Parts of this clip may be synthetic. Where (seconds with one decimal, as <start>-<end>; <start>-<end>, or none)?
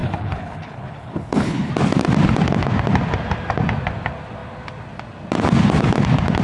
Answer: 0.0-1.7